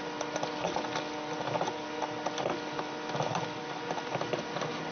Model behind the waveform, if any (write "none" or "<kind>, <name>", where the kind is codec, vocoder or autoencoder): none